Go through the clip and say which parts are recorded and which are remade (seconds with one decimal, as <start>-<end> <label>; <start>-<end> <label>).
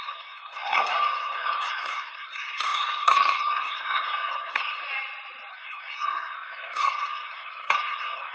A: 0.0-4.8 remade; 4.8-5.5 recorded; 5.5-8.3 remade